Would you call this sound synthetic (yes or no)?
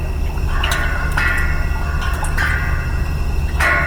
no